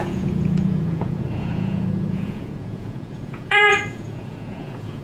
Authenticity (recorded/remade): remade